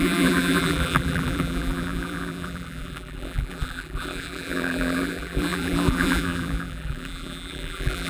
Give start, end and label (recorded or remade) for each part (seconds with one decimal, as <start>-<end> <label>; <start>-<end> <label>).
0.0-8.1 remade